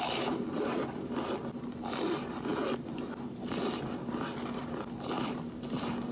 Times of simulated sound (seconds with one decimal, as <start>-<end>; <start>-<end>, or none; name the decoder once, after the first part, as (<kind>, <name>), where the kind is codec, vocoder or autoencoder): none